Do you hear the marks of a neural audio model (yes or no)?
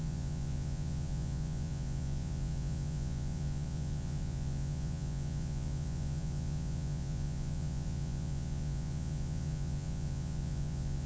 yes